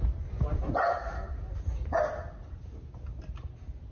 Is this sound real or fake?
real